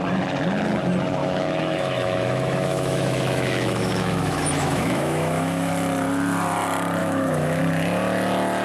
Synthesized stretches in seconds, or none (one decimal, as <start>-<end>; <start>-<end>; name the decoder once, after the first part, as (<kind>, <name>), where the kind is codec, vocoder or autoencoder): 1.2-5.7 (autoencoder, DAC-VAE); 7.0-7.6

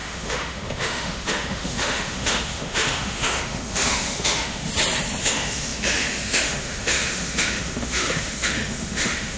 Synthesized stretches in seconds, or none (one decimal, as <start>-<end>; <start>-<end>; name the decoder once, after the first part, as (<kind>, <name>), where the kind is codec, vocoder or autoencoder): 0.0-4.7 (autoencoder, DAC-VAE); 5.2-9.4

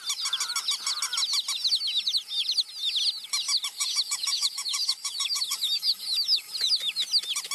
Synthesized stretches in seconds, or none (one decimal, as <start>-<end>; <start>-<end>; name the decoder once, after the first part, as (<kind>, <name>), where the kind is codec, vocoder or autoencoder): 3.7-6.5 (autoencoder, DAC-VAE)

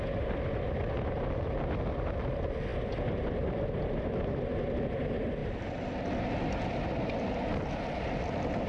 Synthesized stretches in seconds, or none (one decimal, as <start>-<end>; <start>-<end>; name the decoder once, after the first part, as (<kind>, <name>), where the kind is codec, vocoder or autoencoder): none